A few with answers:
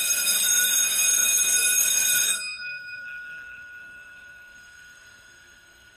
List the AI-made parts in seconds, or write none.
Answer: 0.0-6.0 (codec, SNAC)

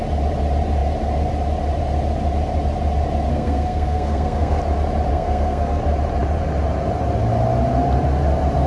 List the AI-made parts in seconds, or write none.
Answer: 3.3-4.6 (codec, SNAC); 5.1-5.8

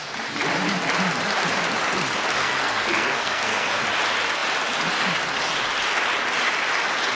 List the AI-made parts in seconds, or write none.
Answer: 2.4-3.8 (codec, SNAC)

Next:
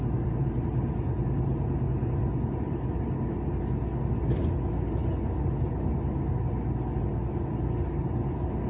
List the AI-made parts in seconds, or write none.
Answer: none